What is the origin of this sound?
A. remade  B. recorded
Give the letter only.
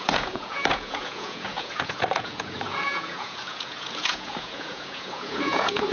A